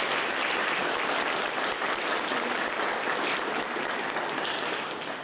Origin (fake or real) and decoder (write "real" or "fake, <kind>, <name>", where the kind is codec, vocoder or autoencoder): real